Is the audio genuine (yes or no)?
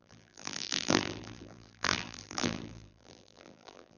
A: no